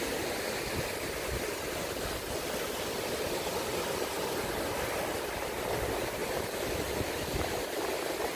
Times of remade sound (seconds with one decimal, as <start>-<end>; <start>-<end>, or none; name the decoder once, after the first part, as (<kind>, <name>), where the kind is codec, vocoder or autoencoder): none

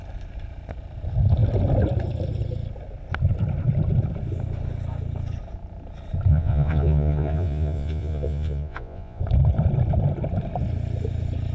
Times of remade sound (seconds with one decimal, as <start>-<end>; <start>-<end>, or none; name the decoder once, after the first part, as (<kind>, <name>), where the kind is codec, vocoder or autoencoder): 6.3-9.2 (vocoder, Vocos)

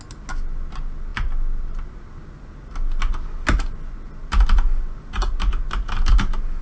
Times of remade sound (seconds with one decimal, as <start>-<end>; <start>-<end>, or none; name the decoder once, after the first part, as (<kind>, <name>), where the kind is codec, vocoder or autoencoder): none

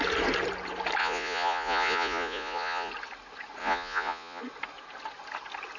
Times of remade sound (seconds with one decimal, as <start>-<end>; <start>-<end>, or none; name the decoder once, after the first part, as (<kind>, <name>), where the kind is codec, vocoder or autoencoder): 1.0-2.9 (vocoder, Vocos); 3.6-4.4

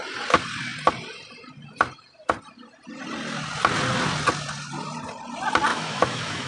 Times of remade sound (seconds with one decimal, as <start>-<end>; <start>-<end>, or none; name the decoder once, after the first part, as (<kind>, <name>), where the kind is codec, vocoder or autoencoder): 5.7-6.5 (autoencoder, DAC-VAE)

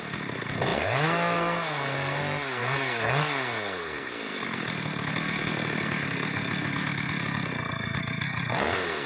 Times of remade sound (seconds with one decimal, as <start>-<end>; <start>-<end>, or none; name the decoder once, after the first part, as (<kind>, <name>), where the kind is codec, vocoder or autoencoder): 0.0-9.1 (codec, SNAC)

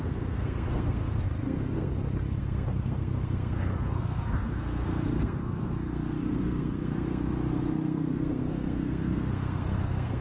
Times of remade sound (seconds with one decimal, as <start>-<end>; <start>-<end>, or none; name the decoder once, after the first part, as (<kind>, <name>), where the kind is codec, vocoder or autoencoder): 0.0-1.9 (codec, SNAC); 2.4-10.2